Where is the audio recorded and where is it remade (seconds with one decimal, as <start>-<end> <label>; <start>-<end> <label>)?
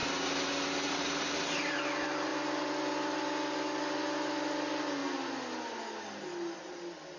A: 0.0-7.2 recorded